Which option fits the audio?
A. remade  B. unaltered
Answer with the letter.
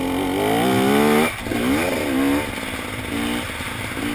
B